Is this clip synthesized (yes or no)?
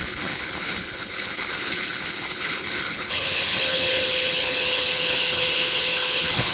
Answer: yes